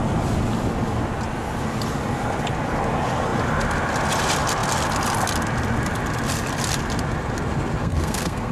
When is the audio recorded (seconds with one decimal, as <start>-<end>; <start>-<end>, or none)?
0.0-7.8